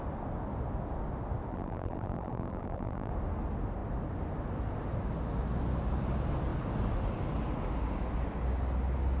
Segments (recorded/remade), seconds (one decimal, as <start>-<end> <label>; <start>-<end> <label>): 0.0-1.5 recorded; 1.5-3.1 remade; 3.1-9.2 recorded